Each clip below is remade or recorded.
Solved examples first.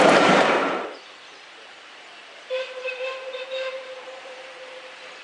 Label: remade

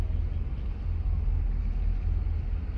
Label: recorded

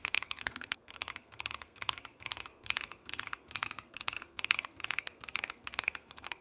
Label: remade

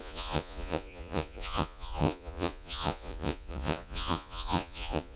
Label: remade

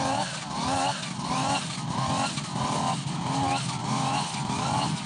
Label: recorded